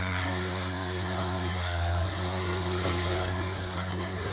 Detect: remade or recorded remade